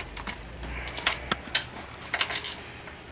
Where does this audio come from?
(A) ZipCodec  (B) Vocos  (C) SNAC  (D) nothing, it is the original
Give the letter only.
D